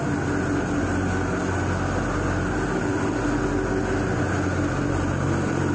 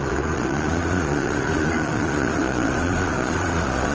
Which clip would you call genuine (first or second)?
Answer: first